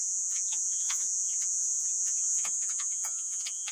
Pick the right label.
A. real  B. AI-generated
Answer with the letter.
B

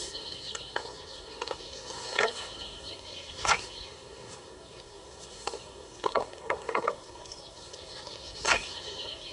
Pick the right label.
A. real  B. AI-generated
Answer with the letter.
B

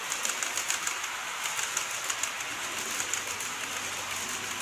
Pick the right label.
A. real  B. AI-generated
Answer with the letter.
A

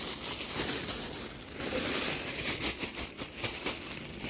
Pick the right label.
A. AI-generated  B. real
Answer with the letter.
B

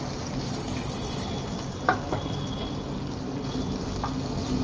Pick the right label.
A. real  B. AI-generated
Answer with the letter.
B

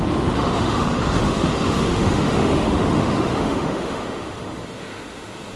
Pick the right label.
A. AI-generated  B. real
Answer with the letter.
A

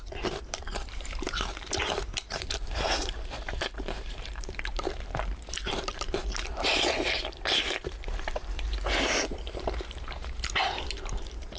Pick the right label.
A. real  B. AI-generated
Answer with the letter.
B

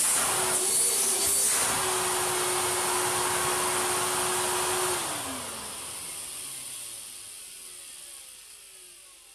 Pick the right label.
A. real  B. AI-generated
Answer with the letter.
A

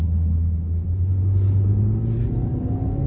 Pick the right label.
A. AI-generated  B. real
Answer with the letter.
B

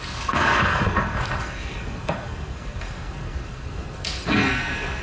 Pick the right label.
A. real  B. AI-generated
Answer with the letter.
B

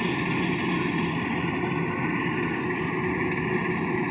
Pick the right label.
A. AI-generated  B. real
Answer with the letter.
B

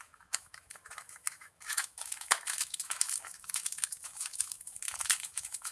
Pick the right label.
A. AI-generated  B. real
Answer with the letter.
A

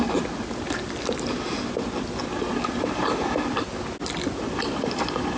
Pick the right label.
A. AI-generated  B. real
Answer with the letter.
B